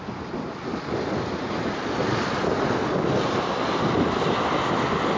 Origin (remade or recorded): recorded